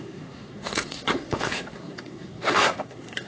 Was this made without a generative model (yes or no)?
no